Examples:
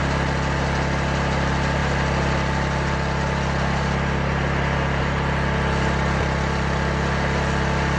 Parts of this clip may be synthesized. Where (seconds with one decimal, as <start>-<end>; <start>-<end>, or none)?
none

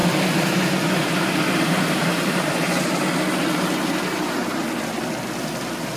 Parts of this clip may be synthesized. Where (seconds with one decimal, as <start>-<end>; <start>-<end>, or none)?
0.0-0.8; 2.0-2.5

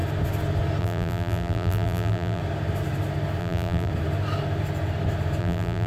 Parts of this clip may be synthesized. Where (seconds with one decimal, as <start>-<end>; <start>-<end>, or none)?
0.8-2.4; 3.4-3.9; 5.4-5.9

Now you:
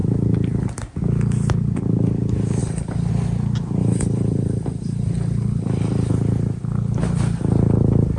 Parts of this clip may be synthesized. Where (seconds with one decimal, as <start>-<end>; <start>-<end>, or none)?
2.6-3.1; 3.8-6.1

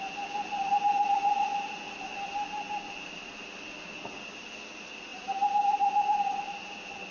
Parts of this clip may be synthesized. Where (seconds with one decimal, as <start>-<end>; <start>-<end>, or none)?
5.1-6.6